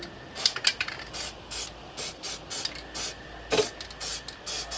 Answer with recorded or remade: recorded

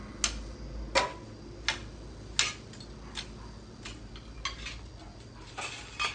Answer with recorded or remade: recorded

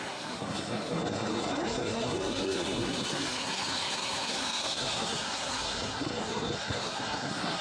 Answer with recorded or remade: remade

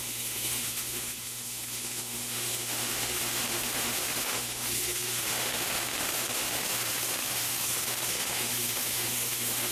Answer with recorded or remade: remade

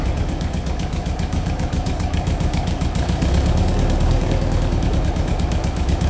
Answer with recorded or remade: remade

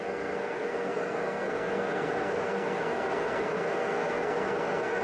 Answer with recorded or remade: remade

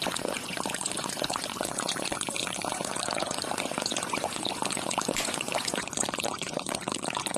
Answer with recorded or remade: remade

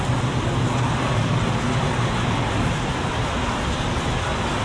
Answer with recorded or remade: recorded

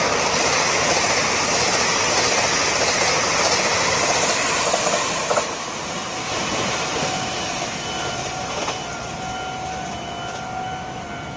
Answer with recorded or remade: recorded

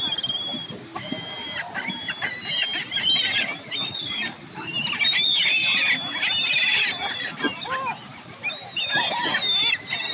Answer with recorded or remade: recorded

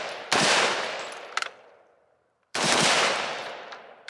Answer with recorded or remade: remade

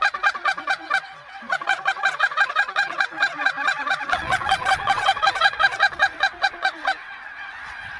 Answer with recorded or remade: remade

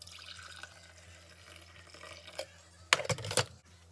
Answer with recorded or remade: recorded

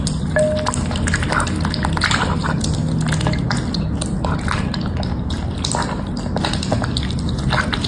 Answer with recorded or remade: recorded